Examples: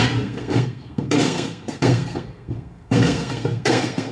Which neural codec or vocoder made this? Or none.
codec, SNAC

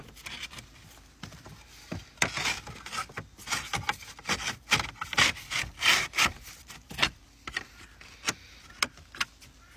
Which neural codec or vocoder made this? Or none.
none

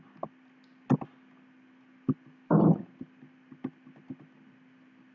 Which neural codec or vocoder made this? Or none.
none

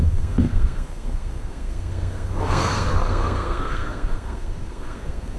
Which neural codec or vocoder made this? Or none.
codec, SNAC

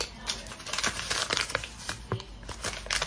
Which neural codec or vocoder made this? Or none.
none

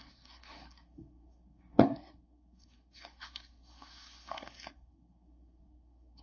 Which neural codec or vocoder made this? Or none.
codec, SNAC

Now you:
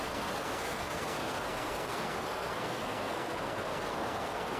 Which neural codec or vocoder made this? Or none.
codec, SNAC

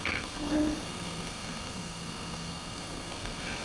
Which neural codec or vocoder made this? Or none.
codec, SNAC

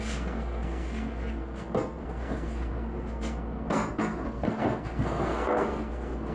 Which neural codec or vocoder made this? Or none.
codec, SNAC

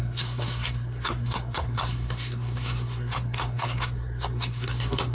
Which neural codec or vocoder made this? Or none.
codec, SNAC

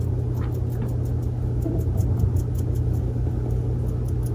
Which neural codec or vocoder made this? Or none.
none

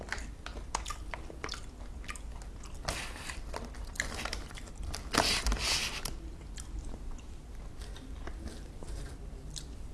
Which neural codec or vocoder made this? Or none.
none